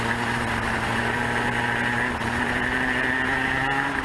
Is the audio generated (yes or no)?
no